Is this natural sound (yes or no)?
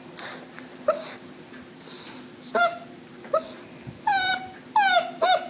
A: yes